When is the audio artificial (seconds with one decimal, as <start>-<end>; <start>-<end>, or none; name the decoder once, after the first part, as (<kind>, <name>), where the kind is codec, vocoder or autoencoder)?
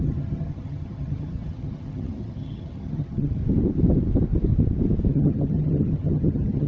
0.0-3.4 (vocoder, HiFi-GAN); 5.1-6.7